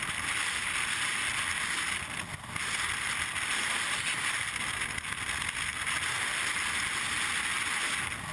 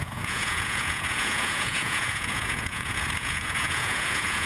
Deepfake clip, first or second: second